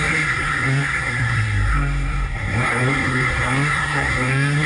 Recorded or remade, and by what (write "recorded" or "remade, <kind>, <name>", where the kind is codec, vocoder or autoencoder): remade, codec, SNAC